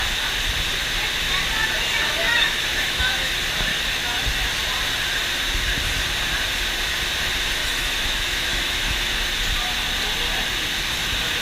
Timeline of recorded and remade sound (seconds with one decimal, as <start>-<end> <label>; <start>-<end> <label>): 0.0-2.2 recorded; 2.2-3.3 remade; 3.3-3.7 recorded; 3.7-4.2 remade; 4.2-7.6 recorded; 7.6-9.1 remade; 9.1-11.4 recorded